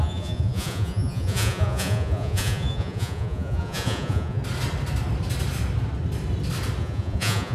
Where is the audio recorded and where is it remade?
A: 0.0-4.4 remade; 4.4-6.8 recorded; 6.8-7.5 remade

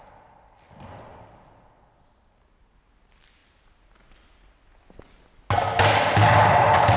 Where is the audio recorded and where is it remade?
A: 0.0-7.0 recorded